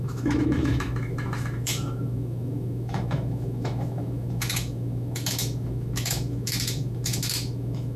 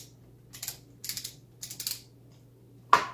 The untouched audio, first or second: second